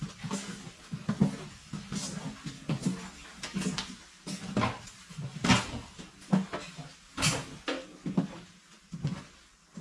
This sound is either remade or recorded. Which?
recorded